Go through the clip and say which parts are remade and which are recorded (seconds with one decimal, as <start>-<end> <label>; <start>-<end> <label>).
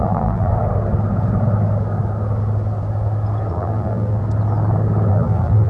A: 0.0-0.5 remade; 0.5-3.5 recorded; 3.5-4.2 remade; 4.2-5.1 recorded; 5.1-5.7 remade